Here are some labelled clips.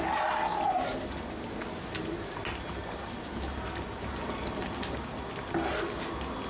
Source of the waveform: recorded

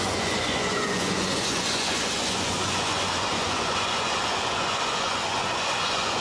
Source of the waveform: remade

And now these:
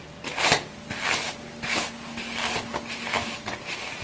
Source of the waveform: recorded